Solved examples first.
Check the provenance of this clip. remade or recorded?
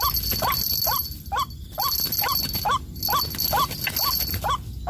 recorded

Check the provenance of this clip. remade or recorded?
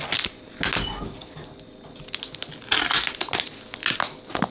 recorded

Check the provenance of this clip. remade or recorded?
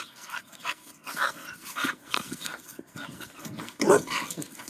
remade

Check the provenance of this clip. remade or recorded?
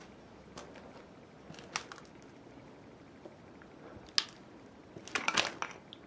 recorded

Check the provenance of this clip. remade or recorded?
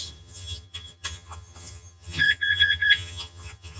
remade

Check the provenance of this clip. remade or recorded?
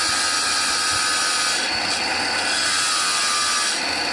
recorded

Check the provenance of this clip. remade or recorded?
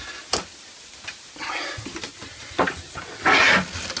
recorded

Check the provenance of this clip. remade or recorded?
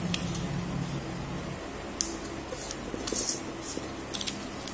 recorded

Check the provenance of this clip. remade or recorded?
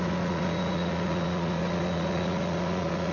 remade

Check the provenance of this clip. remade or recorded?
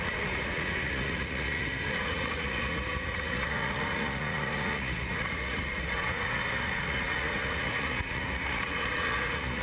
remade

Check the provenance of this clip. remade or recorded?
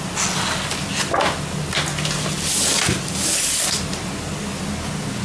recorded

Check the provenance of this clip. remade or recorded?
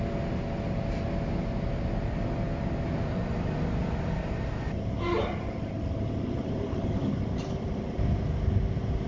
recorded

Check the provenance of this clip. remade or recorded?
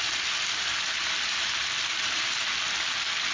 recorded